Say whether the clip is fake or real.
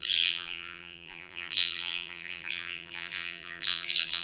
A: fake